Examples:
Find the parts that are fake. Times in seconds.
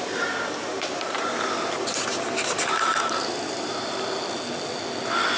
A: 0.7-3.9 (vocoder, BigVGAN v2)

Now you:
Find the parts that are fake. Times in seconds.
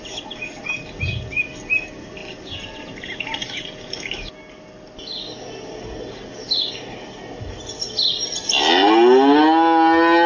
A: none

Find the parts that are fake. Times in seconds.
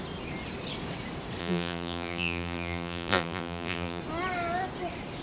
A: 1.4-4.0 (vocoder, BigVGAN v2)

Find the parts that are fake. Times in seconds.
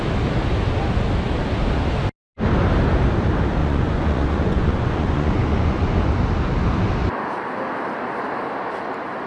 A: 3.6-6.1 (vocoder, Vocos)